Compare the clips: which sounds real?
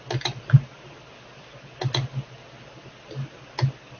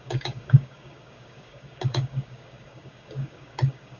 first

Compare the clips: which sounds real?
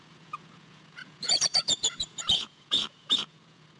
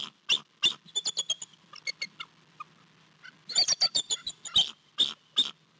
second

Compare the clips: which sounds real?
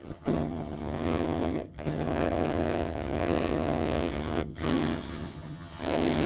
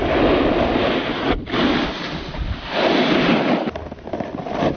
second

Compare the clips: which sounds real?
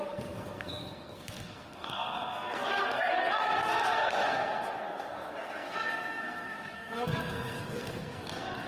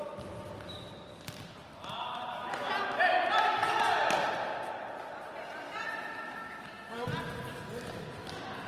second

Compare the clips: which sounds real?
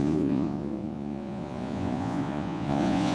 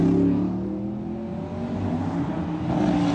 second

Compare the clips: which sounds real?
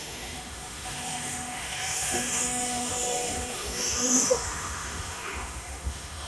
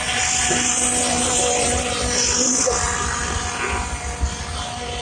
second